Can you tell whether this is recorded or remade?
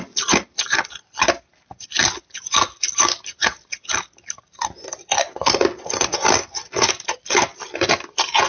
recorded